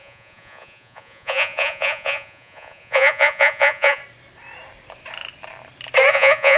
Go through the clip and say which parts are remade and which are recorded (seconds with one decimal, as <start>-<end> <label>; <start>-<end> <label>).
0.0-4.0 remade; 4.0-6.1 recorded; 6.1-6.6 remade